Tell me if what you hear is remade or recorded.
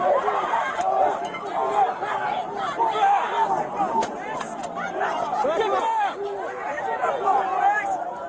recorded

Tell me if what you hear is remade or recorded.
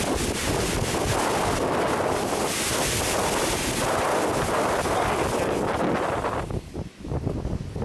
recorded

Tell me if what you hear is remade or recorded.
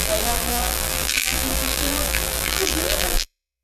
remade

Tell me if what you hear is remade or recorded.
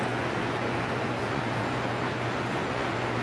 remade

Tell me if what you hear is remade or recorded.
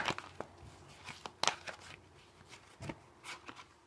recorded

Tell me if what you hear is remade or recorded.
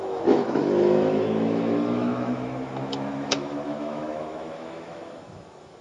remade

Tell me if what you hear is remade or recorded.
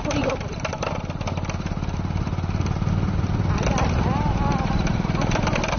recorded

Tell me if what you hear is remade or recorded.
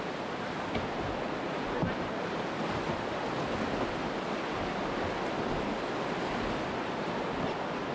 recorded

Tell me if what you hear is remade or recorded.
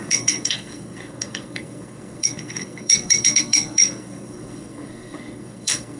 remade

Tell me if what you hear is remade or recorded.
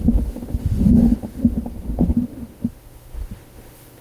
remade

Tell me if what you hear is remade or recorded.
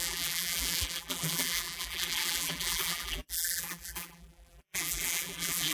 remade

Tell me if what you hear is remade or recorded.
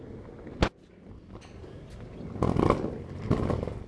recorded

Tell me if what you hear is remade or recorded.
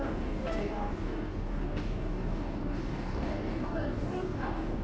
remade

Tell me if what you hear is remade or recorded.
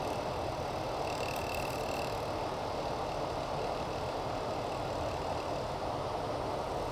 recorded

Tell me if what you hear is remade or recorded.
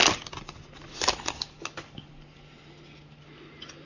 recorded